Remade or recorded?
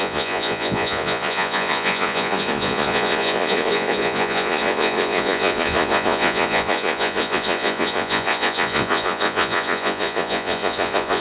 remade